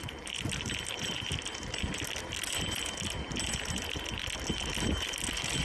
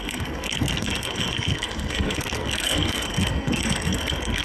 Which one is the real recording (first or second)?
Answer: first